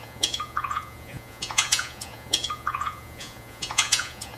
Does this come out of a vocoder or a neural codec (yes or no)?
yes